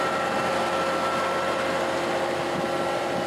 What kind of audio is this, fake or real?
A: real